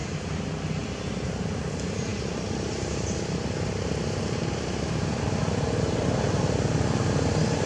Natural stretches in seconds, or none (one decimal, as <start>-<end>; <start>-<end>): 0.5-2.1; 5.1-7.7